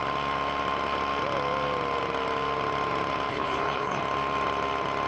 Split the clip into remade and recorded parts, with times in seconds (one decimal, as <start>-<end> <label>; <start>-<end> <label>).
0.0-3.3 recorded; 3.3-4.0 remade; 4.0-5.1 recorded